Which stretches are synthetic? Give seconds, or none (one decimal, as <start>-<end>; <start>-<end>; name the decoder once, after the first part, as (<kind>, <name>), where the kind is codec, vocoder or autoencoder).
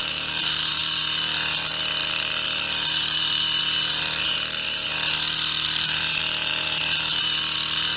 0.0-1.0 (vocoder, BigVGAN v2); 2.0-4.9; 6.1-6.6